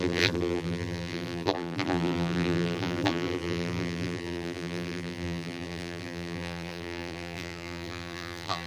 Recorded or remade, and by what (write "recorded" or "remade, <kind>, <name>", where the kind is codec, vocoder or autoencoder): remade, vocoder, BigVGAN v2